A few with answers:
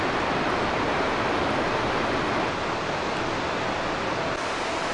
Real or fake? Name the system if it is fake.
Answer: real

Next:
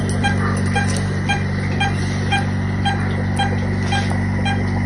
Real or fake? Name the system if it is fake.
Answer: real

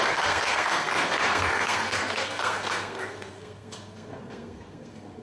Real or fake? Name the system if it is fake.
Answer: fake, codec, SNAC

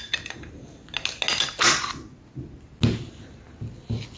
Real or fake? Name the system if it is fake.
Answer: real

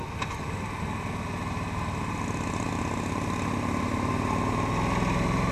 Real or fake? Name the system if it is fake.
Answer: real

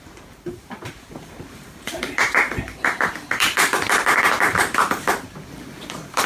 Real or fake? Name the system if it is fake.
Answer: fake, vocoder, BigVGAN v2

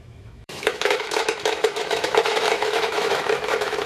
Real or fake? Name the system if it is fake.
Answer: fake, autoencoder, DAC-VAE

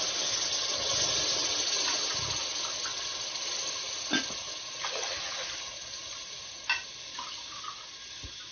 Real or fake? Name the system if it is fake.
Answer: real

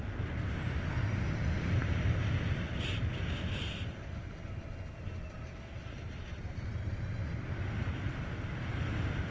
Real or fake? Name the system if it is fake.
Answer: real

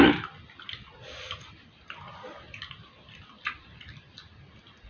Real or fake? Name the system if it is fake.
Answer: real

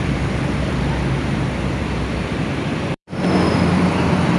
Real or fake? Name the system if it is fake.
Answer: fake, vocoder, BigVGAN v2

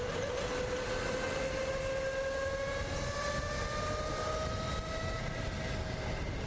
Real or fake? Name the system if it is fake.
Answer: real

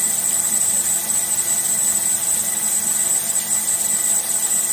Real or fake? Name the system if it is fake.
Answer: real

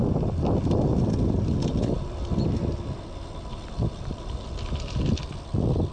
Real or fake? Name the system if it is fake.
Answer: real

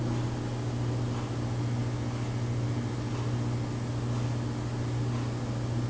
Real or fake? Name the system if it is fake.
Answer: real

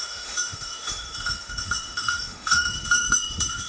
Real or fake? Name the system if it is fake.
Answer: fake, autoencoder, DAC-VAE